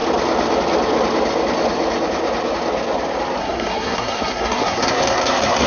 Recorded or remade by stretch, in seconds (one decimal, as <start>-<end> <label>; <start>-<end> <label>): 0.0-3.4 recorded; 3.4-5.7 remade